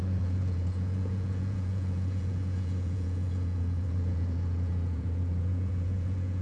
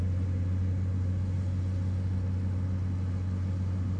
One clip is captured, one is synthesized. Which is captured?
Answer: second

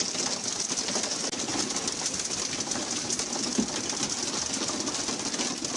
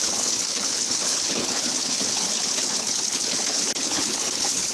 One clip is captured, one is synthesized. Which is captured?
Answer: first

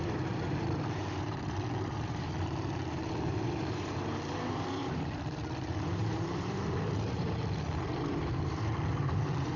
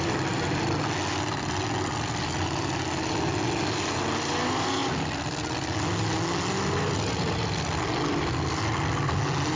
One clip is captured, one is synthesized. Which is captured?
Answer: second